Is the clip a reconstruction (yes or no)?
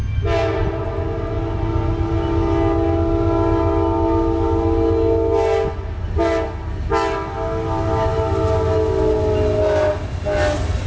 no